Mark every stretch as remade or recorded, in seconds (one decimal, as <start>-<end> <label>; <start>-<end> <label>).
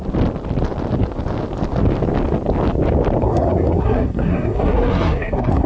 0.0-3.2 recorded; 3.2-5.7 remade